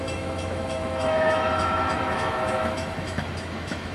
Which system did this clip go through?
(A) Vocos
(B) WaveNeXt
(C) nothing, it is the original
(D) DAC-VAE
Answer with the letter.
D